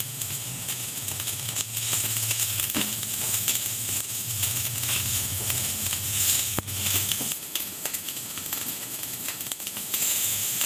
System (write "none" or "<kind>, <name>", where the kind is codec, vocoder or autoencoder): autoencoder, DAC-VAE